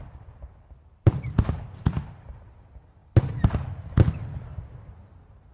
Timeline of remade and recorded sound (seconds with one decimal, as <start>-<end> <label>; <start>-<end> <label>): 0.0-5.5 recorded